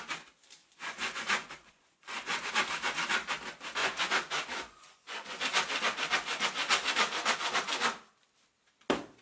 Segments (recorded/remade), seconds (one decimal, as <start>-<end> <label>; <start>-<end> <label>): 0.0-0.6 recorded; 0.6-2.5 remade; 2.5-3.8 recorded; 3.8-5.4 remade; 5.4-9.2 recorded